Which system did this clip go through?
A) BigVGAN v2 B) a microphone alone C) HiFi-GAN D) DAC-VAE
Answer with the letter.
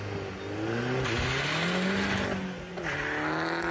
B